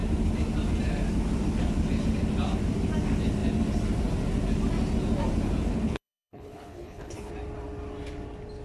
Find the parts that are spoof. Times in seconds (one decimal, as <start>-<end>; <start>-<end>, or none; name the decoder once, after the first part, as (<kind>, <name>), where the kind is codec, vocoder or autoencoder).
5.7-7.3 (codec, HILCodec)